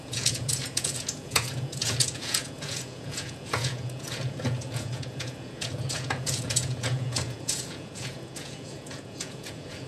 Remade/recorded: remade